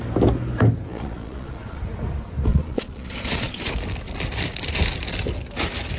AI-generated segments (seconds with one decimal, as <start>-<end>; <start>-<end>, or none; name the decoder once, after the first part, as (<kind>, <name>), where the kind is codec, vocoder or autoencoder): 0.9-1.8 (vocoder, Vocos); 2.5-3.7